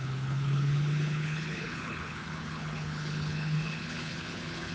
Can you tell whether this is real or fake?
fake